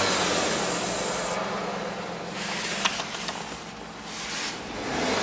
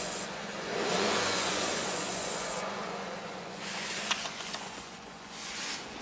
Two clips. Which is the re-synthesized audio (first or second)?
second